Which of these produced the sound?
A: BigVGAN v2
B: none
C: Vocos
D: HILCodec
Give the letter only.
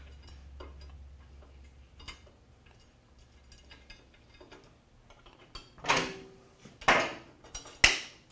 B